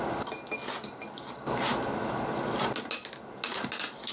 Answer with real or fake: real